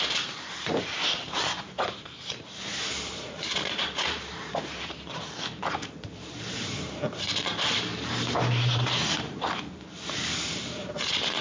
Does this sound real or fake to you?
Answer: fake